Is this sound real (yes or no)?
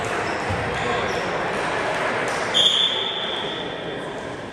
yes